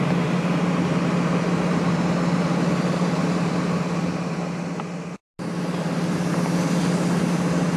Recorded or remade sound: recorded